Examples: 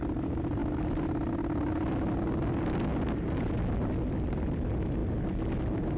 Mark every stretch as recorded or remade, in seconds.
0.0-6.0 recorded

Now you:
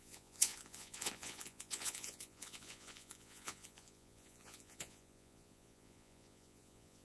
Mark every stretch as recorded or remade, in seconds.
0.0-7.0 remade

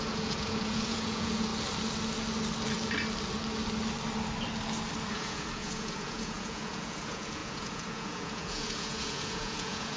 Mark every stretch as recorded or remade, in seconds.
0.0-1.5 remade; 1.5-5.1 recorded; 5.1-10.0 remade

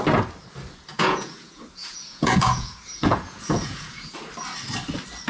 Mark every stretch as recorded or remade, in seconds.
0.0-0.9 recorded; 0.9-4.1 remade; 4.1-5.3 recorded

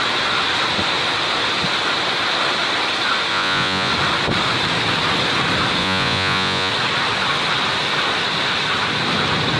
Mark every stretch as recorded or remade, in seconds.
0.0-3.3 recorded; 3.3-3.9 remade; 3.9-5.8 recorded; 5.8-6.7 remade; 6.7-9.6 recorded